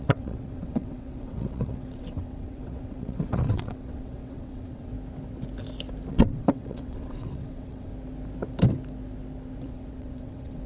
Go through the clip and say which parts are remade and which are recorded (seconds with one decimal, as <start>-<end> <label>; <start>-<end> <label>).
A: 0.0-4.9 remade; 4.9-6.1 recorded; 6.1-7.9 remade; 7.9-9.7 recorded; 9.7-10.7 remade